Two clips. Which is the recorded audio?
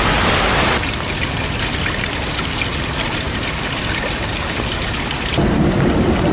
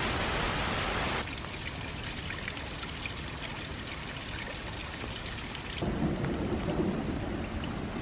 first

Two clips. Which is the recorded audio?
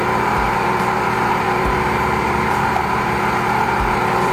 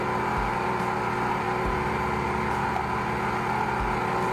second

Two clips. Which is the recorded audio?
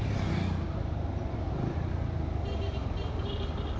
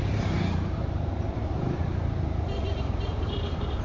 first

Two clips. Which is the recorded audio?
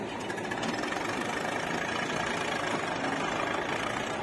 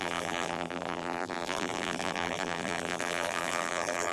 first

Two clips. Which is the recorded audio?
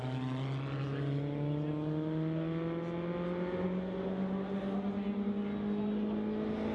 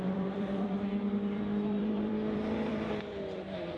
first